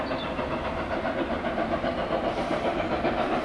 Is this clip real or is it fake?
fake